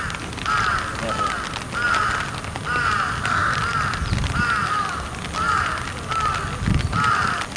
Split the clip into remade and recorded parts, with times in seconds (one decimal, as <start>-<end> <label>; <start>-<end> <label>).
0.0-7.6 recorded